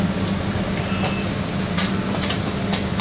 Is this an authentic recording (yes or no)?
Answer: yes